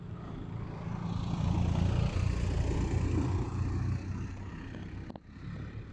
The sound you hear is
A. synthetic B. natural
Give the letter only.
B